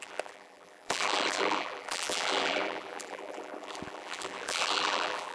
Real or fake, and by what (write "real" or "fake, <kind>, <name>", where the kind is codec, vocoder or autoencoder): fake, vocoder, BigVGAN v2